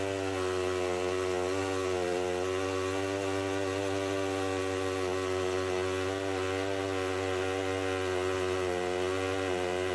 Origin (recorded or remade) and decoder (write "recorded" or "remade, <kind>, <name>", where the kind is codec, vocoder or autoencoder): recorded